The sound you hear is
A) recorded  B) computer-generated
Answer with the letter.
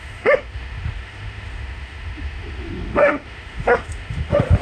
B